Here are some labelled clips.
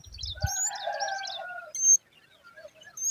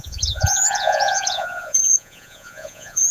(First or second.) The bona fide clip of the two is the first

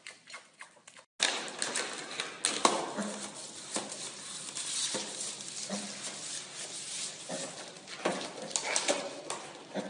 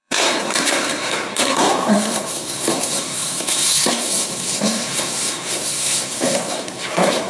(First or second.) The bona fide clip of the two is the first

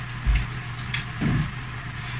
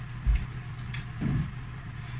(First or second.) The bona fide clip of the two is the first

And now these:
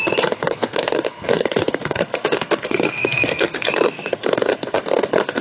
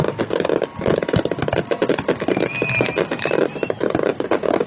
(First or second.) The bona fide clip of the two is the second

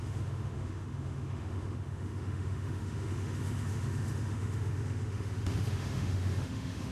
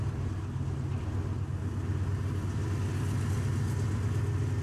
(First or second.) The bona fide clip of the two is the second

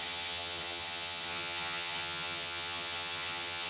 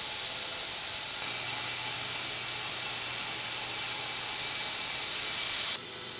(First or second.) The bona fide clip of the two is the second